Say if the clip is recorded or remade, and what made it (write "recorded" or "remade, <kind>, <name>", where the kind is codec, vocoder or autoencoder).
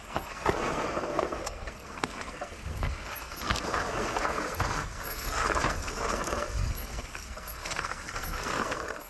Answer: remade, codec, SNAC